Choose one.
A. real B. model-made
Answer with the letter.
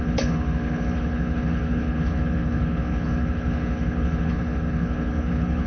B